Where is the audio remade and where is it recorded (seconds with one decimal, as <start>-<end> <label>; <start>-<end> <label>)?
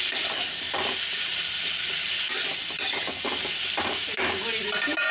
0.0-5.1 recorded